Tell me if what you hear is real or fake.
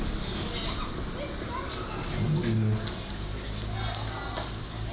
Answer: real